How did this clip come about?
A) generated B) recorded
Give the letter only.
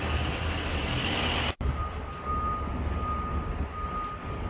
B